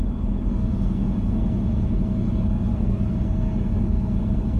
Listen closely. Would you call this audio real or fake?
fake